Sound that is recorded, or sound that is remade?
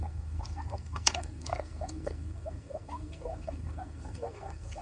remade